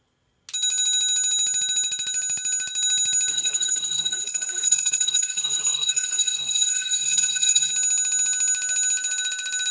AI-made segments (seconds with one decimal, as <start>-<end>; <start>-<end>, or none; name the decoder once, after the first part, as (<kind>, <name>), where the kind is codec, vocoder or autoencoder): 3.3-7.7 (codec, SNAC)